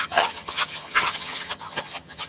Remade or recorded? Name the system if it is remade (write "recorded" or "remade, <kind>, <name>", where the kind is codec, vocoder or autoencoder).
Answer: remade, vocoder, HiFi-GAN